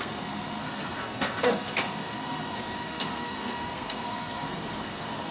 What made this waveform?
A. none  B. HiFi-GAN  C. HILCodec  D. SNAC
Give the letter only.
D